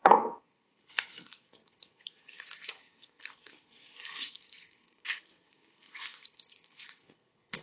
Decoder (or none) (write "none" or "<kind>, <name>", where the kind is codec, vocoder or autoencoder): codec, SNAC